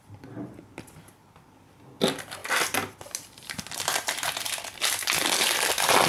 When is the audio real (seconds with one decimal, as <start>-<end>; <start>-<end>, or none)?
0.0-6.1